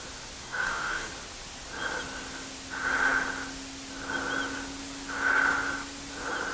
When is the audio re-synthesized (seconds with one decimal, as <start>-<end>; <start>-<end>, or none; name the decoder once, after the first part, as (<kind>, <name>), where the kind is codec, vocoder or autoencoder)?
0.4-1.1 (codec, DAC)